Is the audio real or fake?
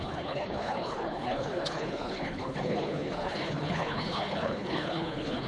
fake